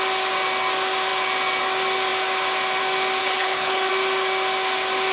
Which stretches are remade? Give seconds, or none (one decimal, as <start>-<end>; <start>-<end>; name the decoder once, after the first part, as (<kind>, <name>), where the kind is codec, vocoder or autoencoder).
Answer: 3.2-3.9 (codec, HILCodec)